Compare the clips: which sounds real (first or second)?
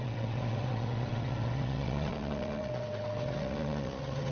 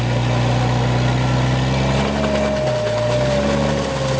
second